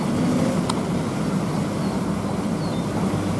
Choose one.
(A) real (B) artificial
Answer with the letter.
A